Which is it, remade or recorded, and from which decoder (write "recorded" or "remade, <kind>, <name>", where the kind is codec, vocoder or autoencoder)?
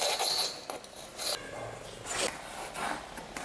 recorded